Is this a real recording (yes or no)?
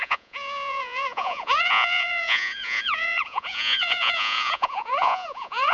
no